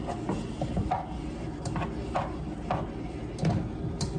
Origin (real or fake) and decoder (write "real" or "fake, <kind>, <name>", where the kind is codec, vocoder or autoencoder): real